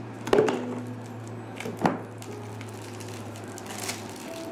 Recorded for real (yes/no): yes